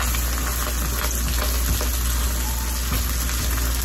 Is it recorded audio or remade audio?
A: recorded